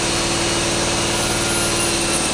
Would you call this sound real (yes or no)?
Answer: yes